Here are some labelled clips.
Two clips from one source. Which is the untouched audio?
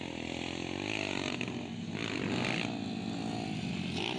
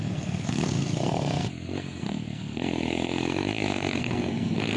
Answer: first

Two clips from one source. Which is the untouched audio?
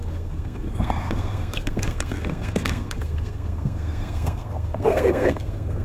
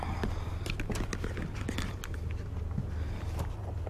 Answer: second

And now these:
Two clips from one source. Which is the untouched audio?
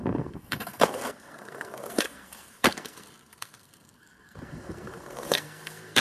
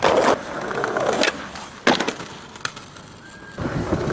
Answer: second